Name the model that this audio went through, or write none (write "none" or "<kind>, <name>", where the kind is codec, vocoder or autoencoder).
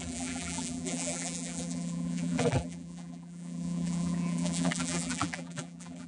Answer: vocoder, BigVGAN v2